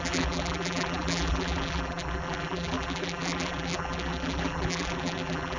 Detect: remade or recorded remade